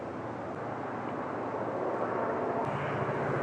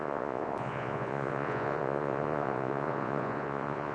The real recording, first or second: first